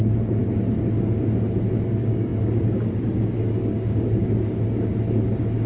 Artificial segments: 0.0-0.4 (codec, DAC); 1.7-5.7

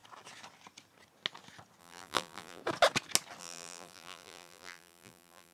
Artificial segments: 1.8-2.6 (vocoder, BigVGAN v2); 3.4-5.5

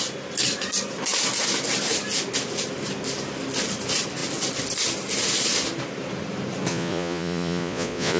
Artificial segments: 6.7-8.2 (vocoder, Vocos)